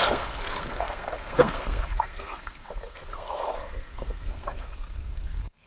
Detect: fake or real fake